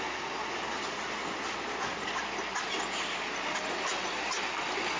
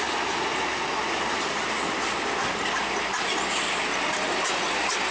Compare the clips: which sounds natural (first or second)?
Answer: first